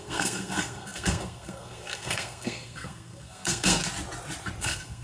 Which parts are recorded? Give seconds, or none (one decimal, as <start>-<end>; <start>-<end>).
3.8-4.6